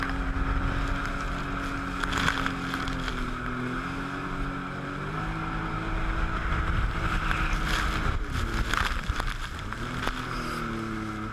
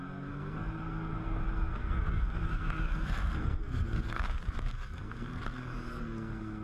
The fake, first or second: second